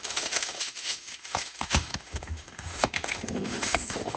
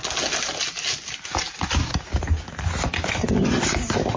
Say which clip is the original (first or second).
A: second